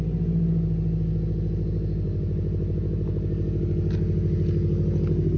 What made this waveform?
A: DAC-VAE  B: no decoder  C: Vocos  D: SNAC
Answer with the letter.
B